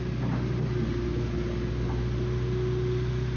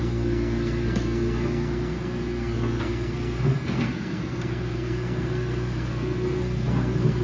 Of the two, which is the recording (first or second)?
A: first